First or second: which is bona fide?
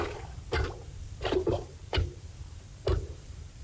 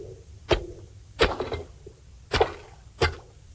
second